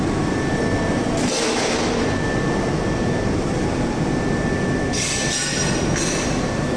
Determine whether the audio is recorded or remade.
recorded